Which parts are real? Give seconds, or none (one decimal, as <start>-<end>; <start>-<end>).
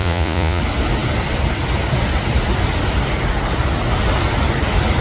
0.6-5.0